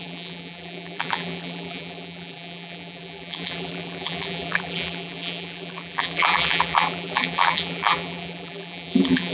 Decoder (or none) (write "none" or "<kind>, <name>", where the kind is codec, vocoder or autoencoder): vocoder, BigVGAN v2